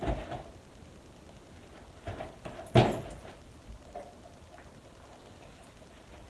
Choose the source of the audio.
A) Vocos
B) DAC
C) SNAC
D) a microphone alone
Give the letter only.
D